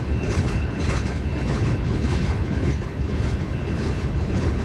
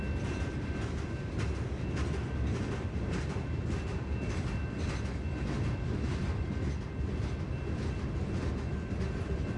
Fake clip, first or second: first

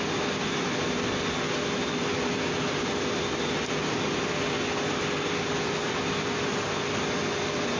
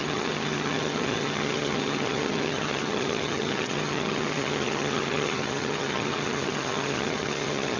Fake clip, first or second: second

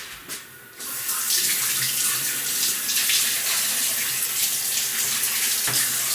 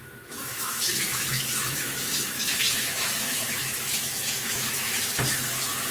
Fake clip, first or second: second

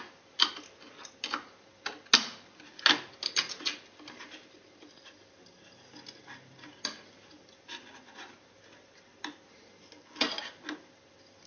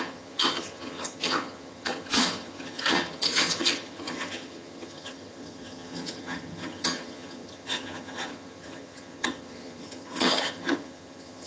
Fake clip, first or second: second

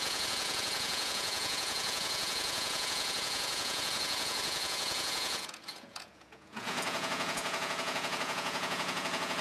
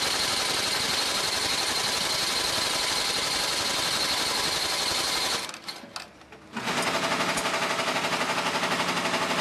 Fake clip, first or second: first